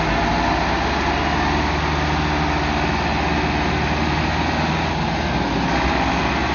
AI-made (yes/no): no